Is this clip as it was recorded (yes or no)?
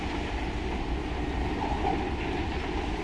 yes